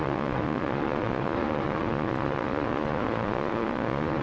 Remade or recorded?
remade